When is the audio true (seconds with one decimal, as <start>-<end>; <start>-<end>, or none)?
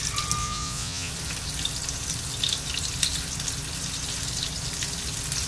0.0-0.4; 1.1-5.5